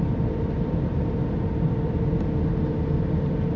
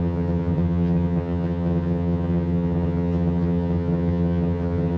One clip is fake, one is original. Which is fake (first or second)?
second